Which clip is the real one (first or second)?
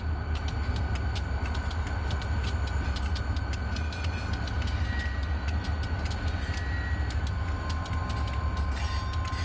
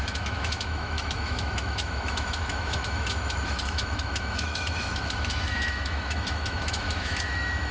first